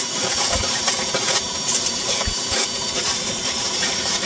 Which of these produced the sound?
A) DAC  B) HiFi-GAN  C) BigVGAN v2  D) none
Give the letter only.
C